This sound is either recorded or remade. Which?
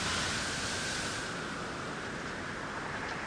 recorded